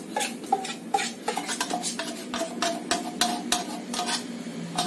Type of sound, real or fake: real